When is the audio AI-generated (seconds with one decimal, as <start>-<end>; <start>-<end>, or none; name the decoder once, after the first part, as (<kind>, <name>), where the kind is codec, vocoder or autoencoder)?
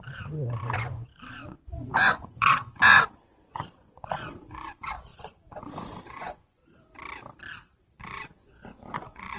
0.0-6.6 (vocoder, Vocos); 8.0-9.4